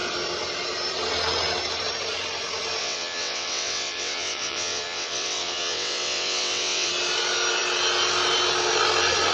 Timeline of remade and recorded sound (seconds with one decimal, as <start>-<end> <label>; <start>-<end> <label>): 0.0-2.8 recorded; 2.8-6.9 remade; 6.9-9.3 recorded

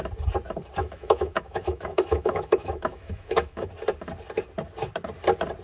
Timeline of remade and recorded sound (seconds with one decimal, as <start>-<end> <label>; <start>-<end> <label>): 0.0-0.8 recorded; 0.8-3.7 remade; 3.7-5.6 recorded

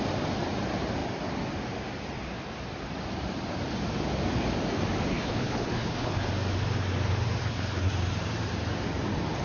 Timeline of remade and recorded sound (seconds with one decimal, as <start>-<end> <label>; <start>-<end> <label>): 0.0-5.1 recorded; 5.1-6.3 remade; 6.3-7.4 recorded; 7.4-7.9 remade; 7.9-9.4 recorded

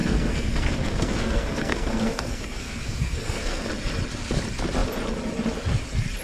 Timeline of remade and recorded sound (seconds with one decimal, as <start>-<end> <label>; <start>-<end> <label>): 0.0-3.7 remade; 3.7-6.2 recorded